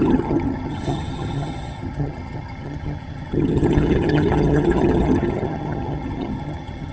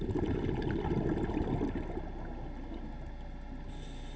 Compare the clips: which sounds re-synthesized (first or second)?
first